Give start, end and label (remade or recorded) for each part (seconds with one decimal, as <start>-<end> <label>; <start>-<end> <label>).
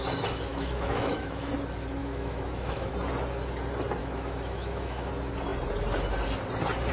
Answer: 0.0-0.5 recorded; 0.5-1.5 remade; 1.5-2.0 recorded; 2.0-2.9 remade; 2.9-4.0 recorded; 4.0-5.1 remade; 5.1-6.9 recorded